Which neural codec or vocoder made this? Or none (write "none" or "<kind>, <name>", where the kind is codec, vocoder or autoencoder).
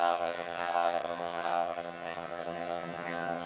vocoder, HiFi-GAN